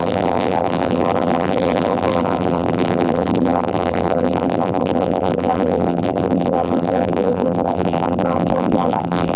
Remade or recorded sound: remade